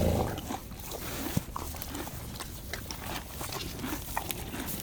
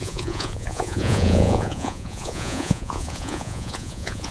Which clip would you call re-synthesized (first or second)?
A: second